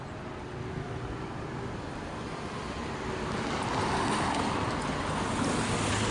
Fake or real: real